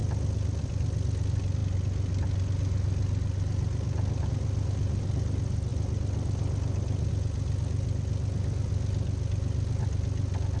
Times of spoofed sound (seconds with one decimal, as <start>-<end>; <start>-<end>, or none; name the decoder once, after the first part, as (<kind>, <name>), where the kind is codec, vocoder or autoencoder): none

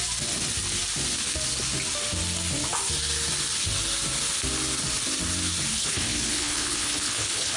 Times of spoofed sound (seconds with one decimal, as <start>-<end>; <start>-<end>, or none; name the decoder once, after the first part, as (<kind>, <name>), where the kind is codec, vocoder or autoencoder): 5.7-7.6 (codec, HILCodec)

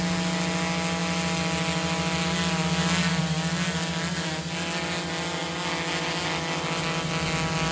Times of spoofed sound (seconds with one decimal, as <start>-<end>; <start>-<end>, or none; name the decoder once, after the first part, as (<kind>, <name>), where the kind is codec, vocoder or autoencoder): none

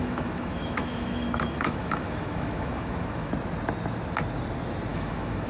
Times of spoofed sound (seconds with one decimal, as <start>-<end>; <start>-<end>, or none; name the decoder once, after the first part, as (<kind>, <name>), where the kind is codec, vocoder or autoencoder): 0.0-3.3 (autoencoder, DAC-VAE); 4.9-5.5

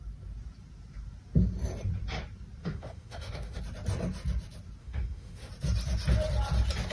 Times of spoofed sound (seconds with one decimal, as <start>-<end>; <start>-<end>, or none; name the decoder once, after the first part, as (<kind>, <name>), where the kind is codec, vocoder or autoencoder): 2.6-3.6 (autoencoder, DAC-VAE); 4.8-5.5